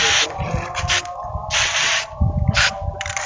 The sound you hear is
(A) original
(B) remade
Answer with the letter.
A